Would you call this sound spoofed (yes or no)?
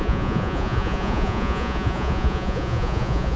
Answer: yes